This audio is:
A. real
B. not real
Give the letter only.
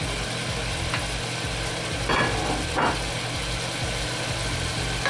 A